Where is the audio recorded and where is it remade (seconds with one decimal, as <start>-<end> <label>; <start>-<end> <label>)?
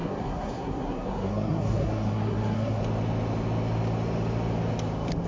0.0-2.8 remade; 2.8-5.3 recorded